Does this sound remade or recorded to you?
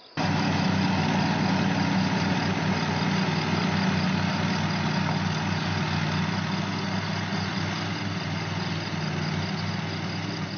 recorded